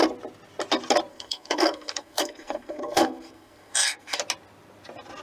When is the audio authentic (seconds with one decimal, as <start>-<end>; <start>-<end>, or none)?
0.0-1.1; 4.2-5.2